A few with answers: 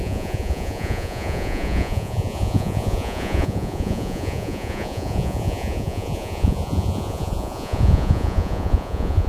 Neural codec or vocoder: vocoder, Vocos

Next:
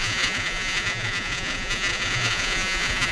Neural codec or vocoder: vocoder, Vocos